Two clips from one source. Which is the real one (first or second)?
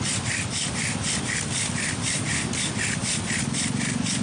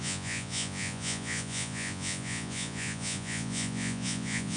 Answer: first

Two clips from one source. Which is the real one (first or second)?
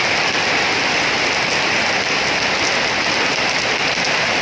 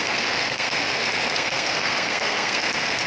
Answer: first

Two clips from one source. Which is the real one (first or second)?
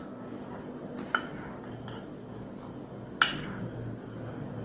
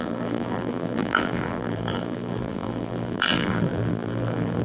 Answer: first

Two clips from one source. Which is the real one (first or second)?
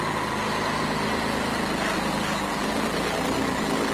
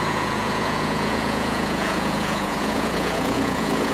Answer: first